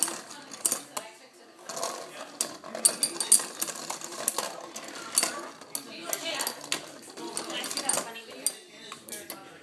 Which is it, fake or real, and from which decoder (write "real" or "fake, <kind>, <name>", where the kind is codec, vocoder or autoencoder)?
real